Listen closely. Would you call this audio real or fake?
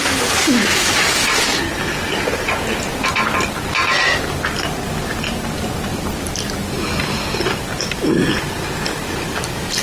real